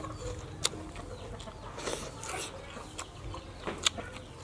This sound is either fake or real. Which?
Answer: real